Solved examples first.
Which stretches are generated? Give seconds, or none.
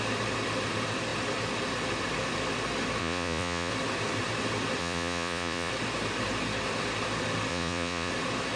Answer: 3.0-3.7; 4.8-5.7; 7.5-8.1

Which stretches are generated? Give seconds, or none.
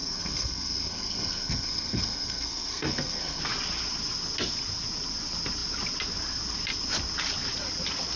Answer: 0.0-3.4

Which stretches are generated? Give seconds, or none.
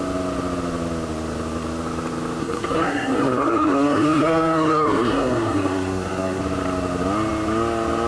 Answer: 2.4-6.4